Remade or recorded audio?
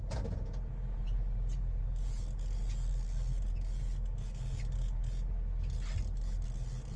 recorded